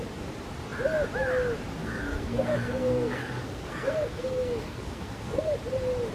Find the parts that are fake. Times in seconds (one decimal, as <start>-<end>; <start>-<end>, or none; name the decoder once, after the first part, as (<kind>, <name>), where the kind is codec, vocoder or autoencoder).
1.8-5.5 (codec, SNAC)